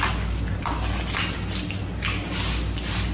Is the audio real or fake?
real